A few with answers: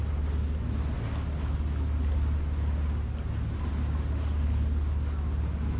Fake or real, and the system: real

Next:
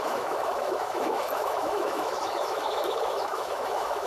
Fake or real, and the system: fake, autoencoder, DAC-VAE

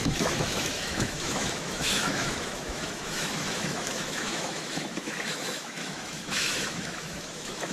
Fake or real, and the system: fake, autoencoder, DAC-VAE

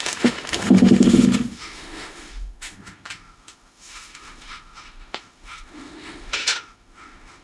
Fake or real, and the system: fake, autoencoder, DAC-VAE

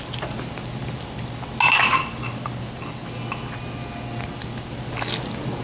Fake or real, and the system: real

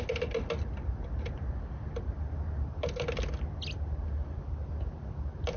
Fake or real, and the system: real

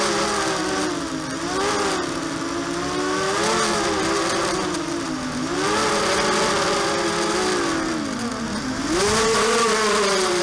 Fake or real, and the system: real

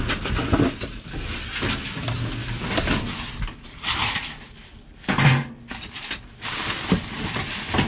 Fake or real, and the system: real